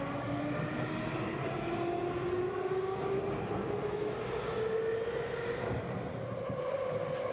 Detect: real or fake real